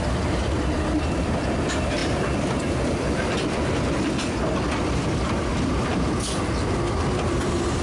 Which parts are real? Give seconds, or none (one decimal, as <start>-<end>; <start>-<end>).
0.0-2.0; 3.6-7.8

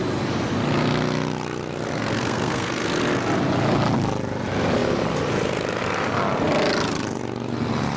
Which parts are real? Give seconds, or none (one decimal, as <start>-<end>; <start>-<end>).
0.0-2.1; 2.7-8.0

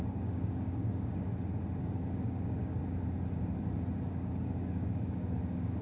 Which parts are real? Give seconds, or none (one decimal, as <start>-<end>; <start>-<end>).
1.3-1.8; 2.8-4.1

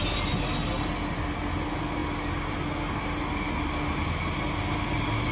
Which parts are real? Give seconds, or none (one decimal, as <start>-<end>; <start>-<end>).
0.0-5.3

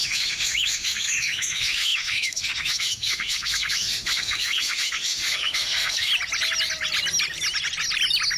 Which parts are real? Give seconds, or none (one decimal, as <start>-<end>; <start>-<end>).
6.1-8.4

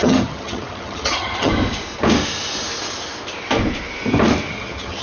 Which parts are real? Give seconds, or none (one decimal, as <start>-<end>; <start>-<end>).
1.5-4.5

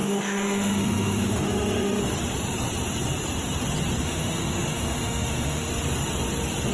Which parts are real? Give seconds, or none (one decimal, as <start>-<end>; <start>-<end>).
2.0-4.0; 5.7-6.7